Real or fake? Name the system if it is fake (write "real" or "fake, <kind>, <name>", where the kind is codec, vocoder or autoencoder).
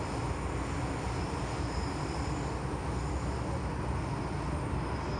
real